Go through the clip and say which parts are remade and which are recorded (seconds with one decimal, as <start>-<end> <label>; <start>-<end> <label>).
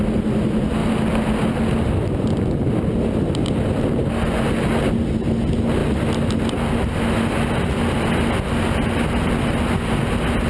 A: 0.0-0.8 recorded; 0.8-1.6 remade; 1.6-10.5 recorded